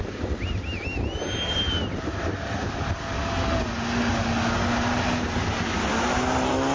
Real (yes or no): yes